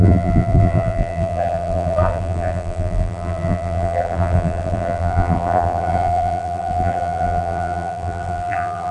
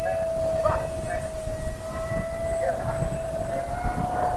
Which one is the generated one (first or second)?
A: first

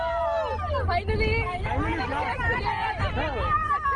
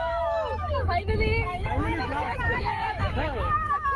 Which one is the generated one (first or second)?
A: second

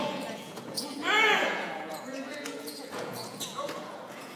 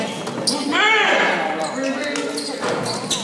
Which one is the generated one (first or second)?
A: first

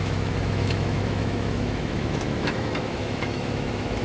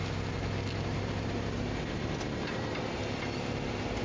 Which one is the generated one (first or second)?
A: first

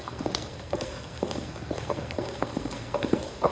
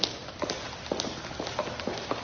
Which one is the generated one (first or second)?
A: first